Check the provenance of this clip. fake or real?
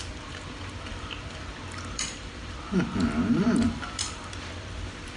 fake